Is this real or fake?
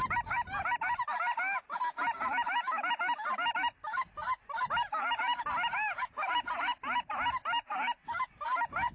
real